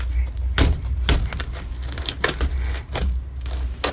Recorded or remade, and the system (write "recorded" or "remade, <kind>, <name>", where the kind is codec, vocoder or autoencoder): recorded